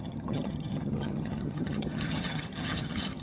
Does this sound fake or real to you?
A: fake